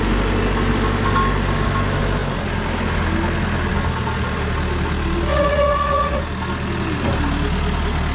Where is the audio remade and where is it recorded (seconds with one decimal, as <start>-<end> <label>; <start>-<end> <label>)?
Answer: 0.0-5.3 recorded; 5.3-6.2 remade; 6.2-8.1 recorded